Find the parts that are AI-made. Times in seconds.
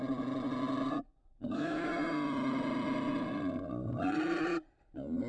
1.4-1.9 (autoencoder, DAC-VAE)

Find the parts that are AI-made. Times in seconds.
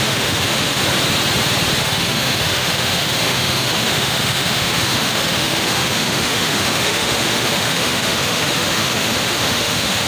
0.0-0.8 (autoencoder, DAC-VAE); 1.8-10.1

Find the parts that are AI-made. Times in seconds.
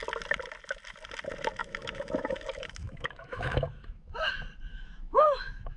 1.6-4.3 (autoencoder, DAC-VAE); 4.7-5.8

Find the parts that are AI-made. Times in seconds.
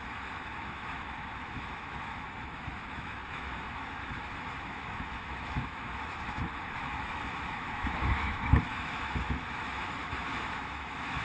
0.0-11.2 (autoencoder, DAC-VAE)